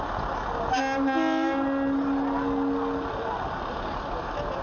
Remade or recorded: recorded